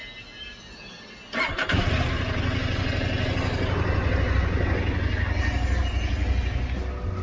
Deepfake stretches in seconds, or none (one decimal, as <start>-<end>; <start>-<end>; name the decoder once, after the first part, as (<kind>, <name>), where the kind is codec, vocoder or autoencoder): none